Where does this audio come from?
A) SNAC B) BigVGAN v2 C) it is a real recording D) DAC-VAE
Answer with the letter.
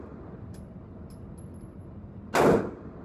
C